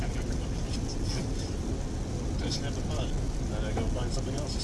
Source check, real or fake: real